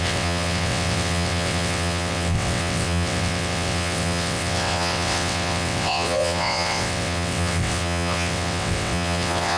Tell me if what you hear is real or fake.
fake